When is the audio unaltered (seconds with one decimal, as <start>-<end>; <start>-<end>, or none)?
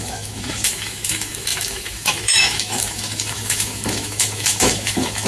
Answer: none